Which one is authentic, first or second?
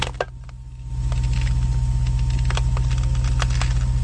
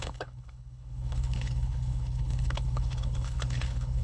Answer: first